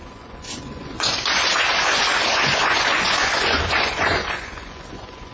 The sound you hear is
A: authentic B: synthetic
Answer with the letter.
B